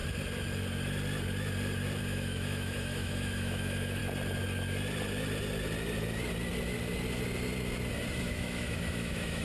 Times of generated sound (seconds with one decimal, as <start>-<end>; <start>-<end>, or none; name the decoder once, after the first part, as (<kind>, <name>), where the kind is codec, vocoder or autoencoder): 2.0-4.0 (autoencoder, DAC-VAE); 8.2-9.4